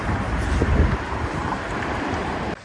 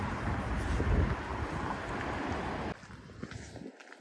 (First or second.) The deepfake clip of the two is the first